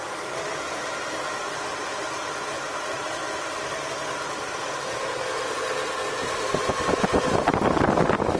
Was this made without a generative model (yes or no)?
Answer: yes